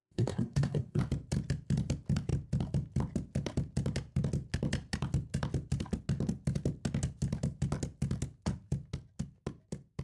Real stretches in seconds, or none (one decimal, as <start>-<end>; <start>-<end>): 1.0-10.0

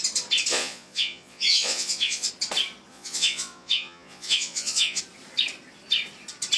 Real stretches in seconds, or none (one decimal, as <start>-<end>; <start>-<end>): 0.0-0.5; 2.3-2.9; 5.0-6.6

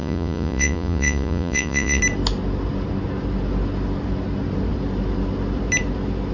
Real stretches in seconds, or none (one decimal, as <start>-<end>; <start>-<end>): 2.0-6.3